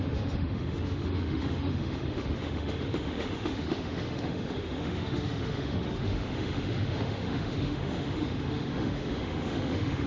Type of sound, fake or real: fake